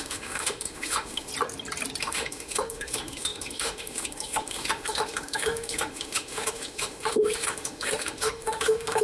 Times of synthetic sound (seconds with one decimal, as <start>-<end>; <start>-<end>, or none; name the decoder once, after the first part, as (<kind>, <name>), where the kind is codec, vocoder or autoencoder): 0.0-1.3 (autoencoder, DAC-VAE); 2.0-9.0